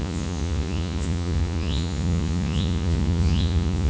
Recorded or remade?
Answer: remade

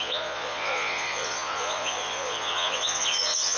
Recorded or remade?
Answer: remade